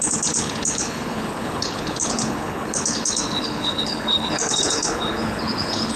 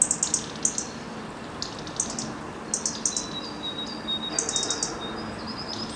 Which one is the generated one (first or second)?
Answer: first